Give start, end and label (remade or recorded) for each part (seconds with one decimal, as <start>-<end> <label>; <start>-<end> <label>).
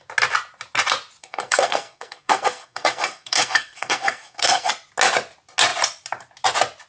0.0-1.2 recorded; 1.2-4.7 remade; 4.7-6.9 recorded